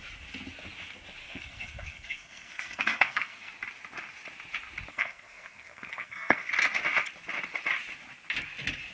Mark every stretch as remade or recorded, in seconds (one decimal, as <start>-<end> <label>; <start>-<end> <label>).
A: 0.0-1.2 recorded; 1.2-3.5 remade; 3.5-4.9 recorded; 4.9-6.5 remade; 6.5-8.9 recorded